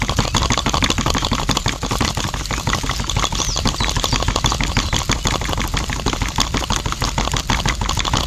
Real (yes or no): yes